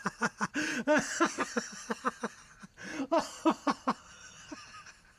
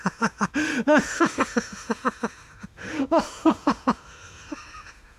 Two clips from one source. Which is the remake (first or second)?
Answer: second